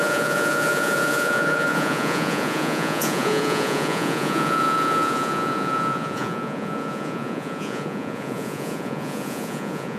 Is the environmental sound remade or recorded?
remade